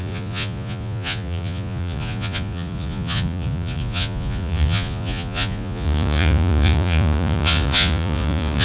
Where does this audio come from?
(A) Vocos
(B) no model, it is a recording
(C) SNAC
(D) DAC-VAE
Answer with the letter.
A